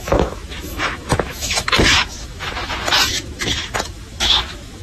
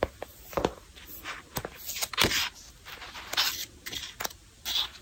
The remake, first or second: first